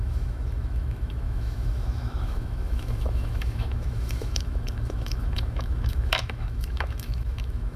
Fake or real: fake